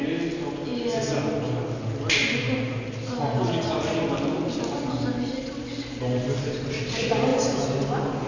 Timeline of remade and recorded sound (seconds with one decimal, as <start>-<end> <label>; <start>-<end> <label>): 0.0-8.3 recorded